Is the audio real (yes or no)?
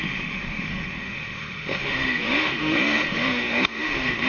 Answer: no